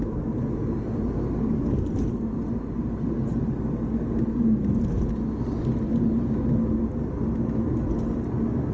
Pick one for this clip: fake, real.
real